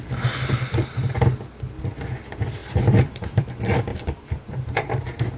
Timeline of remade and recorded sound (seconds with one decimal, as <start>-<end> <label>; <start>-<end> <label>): 0.0-2.6 recorded; 2.6-3.4 remade; 3.4-3.9 recorded; 3.9-5.0 remade; 5.0-5.4 recorded